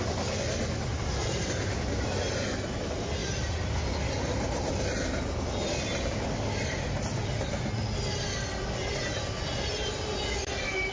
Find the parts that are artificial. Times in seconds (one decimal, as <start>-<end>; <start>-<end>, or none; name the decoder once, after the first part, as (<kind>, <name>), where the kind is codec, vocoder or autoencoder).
none